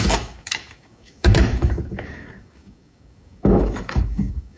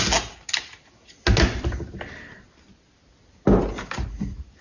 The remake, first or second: first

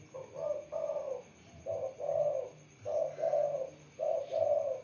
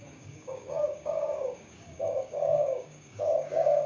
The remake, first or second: second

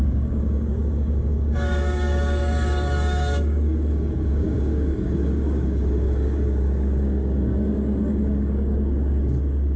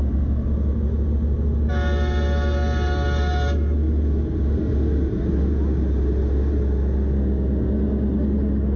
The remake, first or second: first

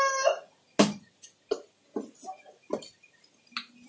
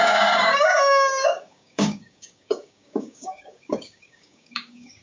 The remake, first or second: second